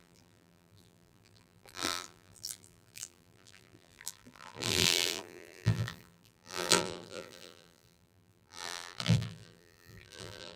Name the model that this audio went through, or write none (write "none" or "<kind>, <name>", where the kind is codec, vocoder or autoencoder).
vocoder, BigVGAN v2